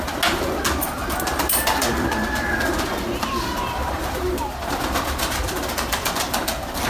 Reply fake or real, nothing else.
real